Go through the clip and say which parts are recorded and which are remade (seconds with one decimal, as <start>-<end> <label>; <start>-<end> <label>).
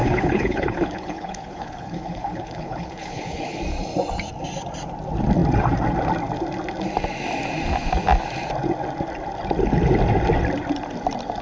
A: 0.0-3.6 remade; 3.6-11.4 recorded